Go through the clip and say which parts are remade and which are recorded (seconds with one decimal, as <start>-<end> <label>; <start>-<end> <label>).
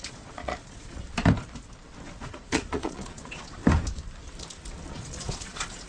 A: 0.0-1.0 remade; 1.0-2.2 recorded; 2.2-3.6 remade; 3.6-4.9 recorded; 4.9-5.9 remade